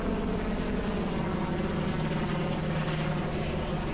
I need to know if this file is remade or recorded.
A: recorded